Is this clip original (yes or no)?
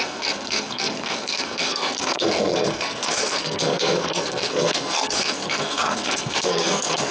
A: no